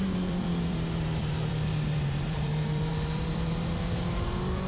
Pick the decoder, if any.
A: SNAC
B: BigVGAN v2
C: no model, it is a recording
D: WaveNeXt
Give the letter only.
B